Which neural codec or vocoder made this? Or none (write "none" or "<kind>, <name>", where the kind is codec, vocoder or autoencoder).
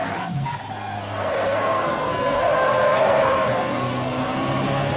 codec, SNAC